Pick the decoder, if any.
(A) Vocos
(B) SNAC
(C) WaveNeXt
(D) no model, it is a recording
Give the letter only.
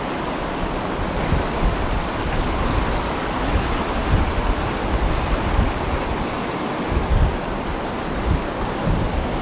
D